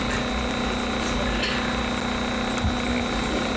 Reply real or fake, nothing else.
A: real